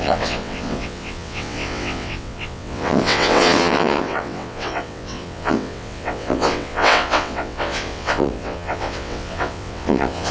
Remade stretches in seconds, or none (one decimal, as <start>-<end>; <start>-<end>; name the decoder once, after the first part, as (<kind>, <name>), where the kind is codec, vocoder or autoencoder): 0.0-10.3 (vocoder, WaveNeXt)